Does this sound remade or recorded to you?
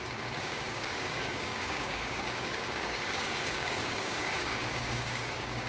remade